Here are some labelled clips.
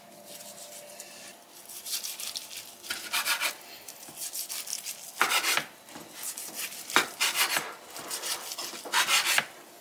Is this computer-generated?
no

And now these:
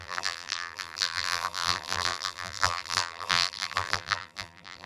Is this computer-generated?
yes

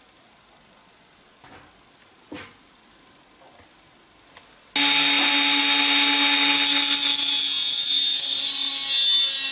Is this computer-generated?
no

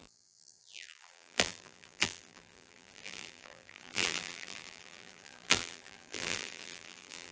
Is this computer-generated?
yes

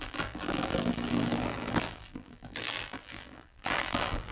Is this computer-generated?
yes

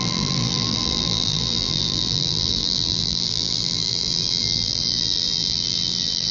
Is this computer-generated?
yes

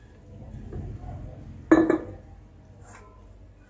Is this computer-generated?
no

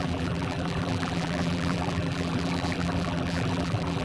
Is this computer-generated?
yes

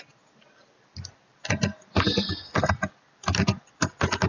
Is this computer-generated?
no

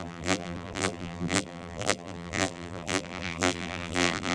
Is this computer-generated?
yes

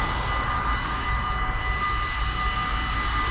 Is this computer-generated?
no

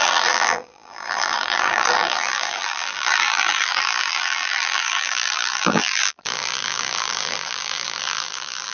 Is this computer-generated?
yes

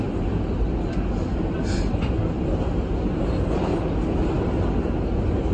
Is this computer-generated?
no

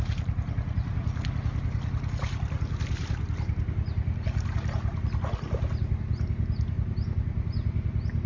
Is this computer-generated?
no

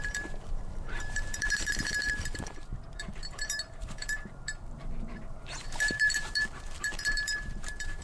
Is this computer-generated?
yes